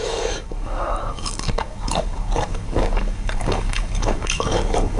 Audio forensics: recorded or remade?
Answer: remade